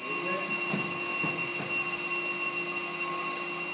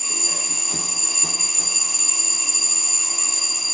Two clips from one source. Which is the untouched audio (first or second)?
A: first